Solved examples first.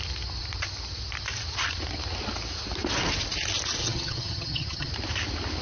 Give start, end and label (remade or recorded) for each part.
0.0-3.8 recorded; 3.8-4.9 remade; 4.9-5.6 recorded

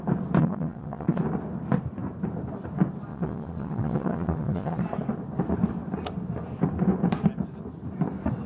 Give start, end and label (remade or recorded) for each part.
0.0-0.4 recorded; 0.4-1.2 remade; 1.2-3.1 recorded; 3.1-4.8 remade; 4.8-8.5 recorded

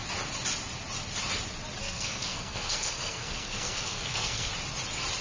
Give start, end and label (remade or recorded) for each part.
0.0-1.8 recorded; 1.8-4.5 remade; 4.5-5.2 recorded